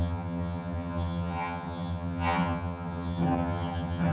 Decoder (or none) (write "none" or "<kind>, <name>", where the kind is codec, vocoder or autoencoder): vocoder, HiFi-GAN